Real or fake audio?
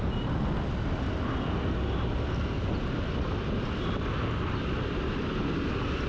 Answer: real